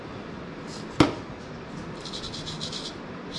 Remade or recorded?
recorded